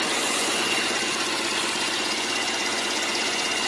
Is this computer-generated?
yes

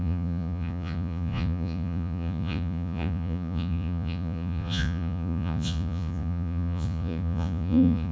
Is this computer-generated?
yes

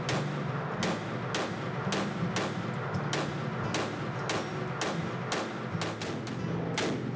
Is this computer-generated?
no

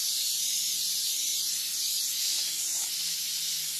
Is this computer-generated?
no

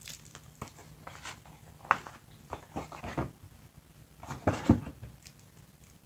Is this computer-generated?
no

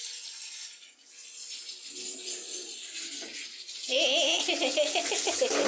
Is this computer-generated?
no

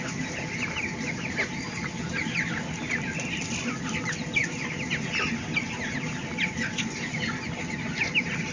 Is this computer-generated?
no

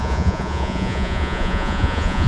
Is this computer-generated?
yes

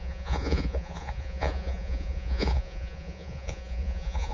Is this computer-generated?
yes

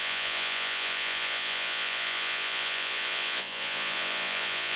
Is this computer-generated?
yes